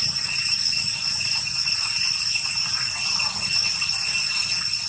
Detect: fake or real real